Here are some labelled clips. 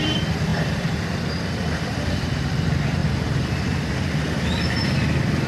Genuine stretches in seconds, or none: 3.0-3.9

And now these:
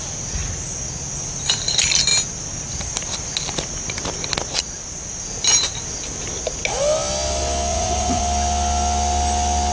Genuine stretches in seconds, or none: 0.0-7.7; 8.2-9.7